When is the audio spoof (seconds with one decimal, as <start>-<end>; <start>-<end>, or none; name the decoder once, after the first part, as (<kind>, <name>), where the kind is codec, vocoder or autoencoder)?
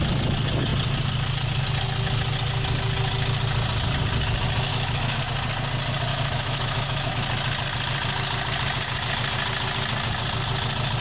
4.7-5.2 (autoencoder, DAC-VAE); 6.1-7.1